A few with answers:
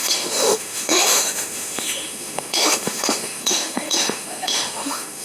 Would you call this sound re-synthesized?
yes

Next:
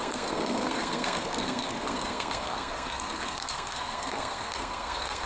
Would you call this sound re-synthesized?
yes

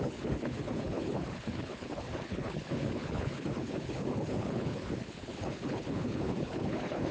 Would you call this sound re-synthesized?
yes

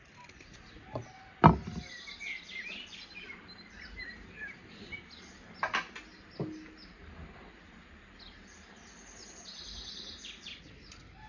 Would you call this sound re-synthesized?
no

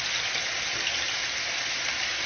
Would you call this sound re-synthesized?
no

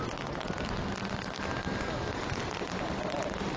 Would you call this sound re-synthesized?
no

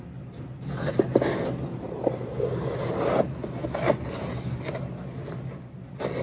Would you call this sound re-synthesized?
no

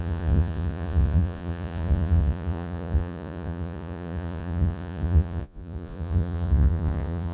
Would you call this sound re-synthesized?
yes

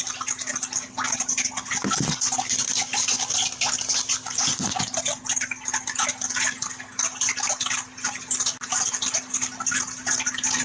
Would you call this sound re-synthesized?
no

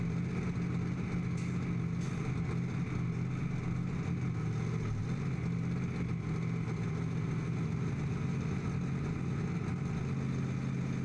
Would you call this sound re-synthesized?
no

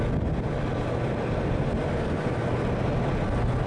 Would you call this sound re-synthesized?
no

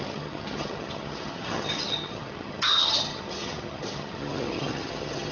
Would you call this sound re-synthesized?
yes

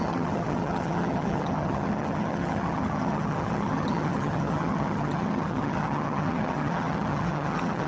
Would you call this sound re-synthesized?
yes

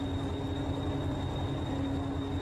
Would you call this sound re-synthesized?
no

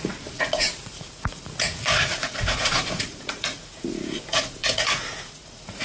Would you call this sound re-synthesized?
yes